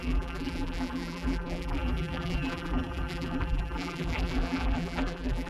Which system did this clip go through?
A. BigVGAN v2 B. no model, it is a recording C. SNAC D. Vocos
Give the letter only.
A